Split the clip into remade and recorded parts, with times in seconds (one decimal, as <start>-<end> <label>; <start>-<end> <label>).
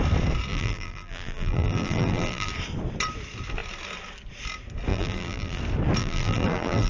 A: 0.0-0.5 recorded; 0.5-2.5 remade; 2.5-4.9 recorded; 4.9-5.6 remade; 5.6-6.0 recorded; 6.0-6.9 remade